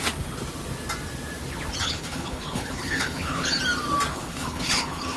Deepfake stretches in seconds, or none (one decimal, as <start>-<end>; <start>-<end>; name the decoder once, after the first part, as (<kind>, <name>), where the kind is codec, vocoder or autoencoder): 1.8-3.6 (codec, HILCodec); 4.1-5.2